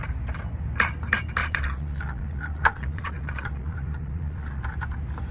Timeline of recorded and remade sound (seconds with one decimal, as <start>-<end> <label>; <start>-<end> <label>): 0.0-1.4 recorded; 1.4-4.6 remade; 4.6-5.3 recorded